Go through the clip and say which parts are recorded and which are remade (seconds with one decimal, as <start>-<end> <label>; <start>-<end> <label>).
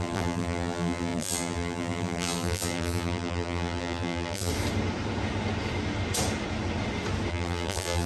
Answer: 0.0-4.5 remade; 4.5-7.3 recorded; 7.3-8.1 remade